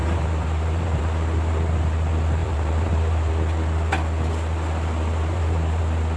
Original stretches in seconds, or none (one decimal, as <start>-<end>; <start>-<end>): 1.0-2.4; 3.3-5.3; 5.8-6.2